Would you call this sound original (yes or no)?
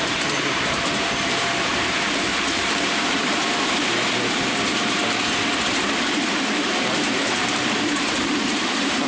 no